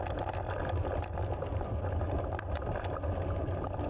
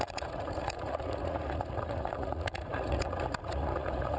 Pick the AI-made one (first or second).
second